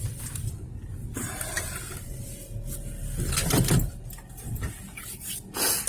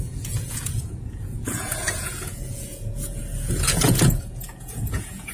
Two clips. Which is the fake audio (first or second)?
second